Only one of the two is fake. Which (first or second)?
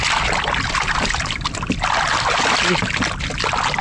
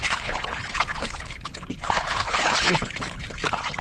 second